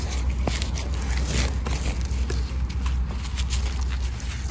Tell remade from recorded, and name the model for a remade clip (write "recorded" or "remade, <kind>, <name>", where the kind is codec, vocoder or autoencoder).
recorded